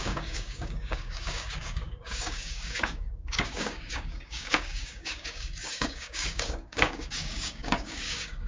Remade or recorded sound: remade